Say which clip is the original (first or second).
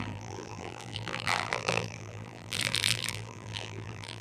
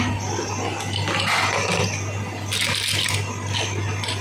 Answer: second